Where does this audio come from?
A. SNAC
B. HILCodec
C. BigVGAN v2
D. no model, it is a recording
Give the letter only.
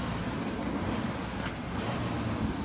D